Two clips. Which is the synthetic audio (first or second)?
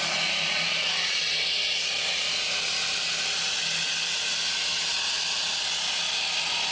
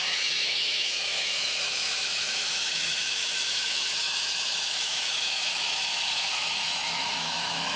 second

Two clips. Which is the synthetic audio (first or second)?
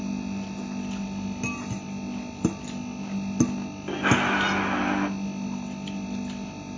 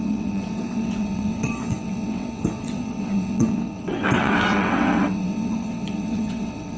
second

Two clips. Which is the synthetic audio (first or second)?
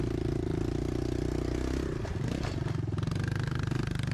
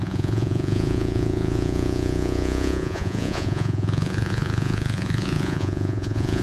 second